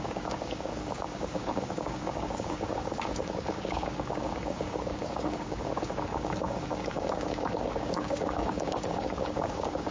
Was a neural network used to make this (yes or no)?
yes